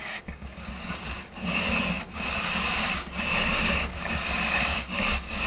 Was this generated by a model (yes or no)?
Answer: yes